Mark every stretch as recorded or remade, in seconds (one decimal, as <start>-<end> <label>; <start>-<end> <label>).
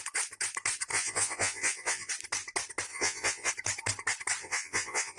0.0-0.9 recorded; 0.9-2.1 remade; 2.1-2.9 recorded; 2.9-3.5 remade; 3.5-4.4 recorded; 4.4-5.2 remade